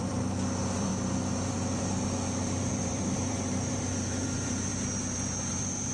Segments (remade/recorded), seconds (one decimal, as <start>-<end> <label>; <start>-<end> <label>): 0.0-0.9 remade; 0.9-2.7 recorded; 2.7-4.7 remade; 4.7-5.5 recorded; 5.5-5.9 remade